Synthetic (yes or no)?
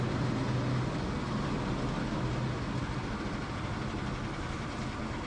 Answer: no